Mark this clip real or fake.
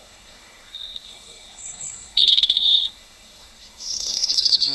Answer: fake